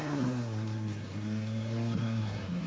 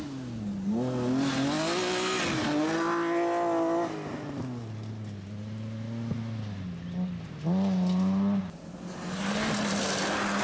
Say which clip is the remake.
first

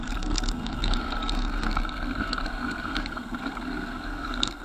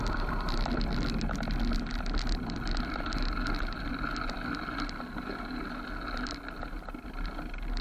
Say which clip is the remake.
first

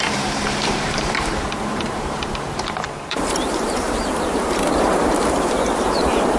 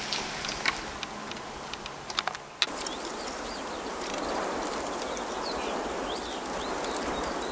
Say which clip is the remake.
first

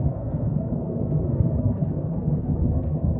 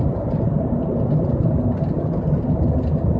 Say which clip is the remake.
first